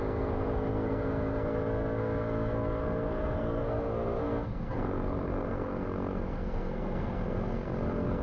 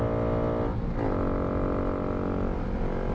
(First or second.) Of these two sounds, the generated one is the first